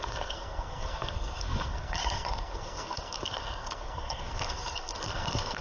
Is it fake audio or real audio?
fake